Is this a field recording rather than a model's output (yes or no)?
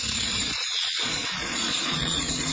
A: no